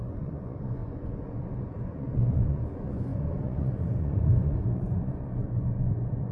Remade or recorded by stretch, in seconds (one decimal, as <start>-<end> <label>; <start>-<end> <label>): 0.0-6.3 remade